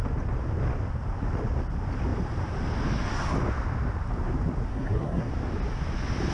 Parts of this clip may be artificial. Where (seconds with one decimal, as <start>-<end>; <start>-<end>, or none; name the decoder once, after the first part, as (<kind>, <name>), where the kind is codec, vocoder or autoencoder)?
4.7-5.3 (codec, SNAC)